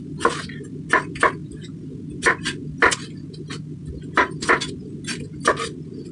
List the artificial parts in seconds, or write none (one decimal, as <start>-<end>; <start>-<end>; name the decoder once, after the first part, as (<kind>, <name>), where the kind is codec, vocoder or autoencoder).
none